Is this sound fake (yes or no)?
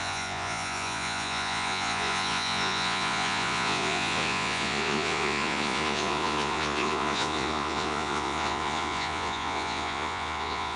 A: yes